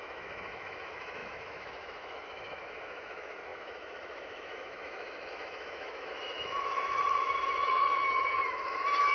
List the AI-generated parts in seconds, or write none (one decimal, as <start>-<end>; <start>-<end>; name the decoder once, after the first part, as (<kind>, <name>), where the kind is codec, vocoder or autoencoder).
0.0-9.1 (autoencoder, DAC-VAE)